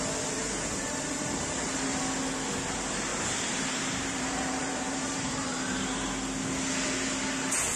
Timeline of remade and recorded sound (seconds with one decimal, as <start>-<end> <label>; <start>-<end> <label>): 0.0-0.4 recorded; 0.4-2.0 remade; 2.0-3.1 recorded; 3.1-6.1 remade; 6.1-7.8 recorded